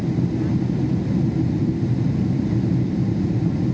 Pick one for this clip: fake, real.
real